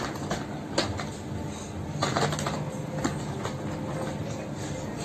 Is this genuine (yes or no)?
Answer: yes